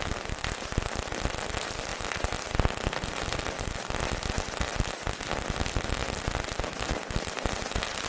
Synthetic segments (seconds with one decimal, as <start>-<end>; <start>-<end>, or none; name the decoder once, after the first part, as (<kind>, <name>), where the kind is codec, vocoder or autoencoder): none

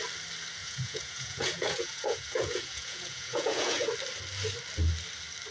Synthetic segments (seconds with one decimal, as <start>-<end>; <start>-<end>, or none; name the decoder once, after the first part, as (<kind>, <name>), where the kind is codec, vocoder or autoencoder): 0.6-3.9 (vocoder, Vocos)